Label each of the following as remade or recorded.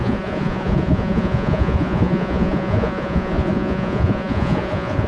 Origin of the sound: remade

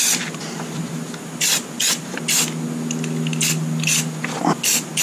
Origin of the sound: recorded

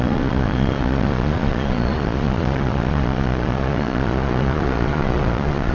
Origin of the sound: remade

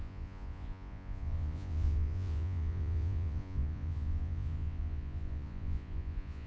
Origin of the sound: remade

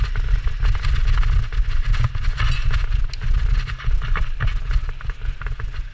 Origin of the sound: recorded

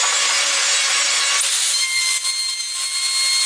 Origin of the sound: recorded